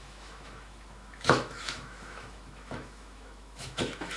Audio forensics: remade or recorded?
remade